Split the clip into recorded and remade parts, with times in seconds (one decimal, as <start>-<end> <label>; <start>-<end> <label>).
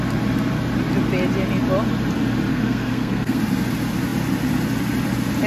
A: 0.0-2.5 recorded; 2.5-3.4 remade; 3.4-5.5 recorded